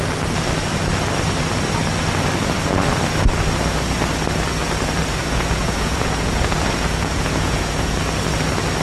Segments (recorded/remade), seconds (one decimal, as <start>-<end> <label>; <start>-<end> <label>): 0.0-5.2 recorded; 5.2-8.0 remade; 8.0-8.8 recorded